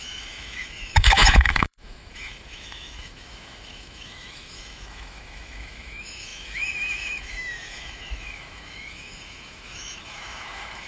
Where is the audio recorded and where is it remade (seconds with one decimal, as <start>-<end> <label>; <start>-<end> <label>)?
0.0-10.9 remade